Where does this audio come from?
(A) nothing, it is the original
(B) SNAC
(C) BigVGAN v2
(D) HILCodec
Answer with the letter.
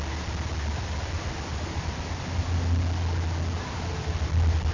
A